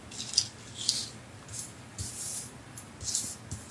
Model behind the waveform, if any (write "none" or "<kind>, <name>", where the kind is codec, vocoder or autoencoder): none